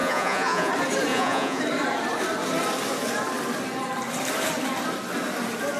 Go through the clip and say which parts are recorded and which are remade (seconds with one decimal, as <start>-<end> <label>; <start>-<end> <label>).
0.0-0.7 remade; 0.7-1.1 recorded; 1.1-1.6 remade; 1.6-5.8 recorded